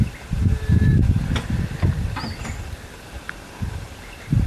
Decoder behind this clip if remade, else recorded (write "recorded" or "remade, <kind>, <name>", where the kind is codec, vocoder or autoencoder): recorded